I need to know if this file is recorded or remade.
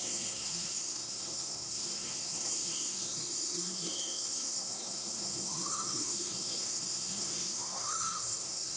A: remade